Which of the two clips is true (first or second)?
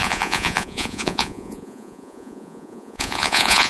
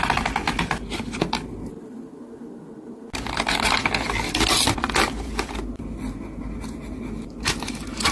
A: second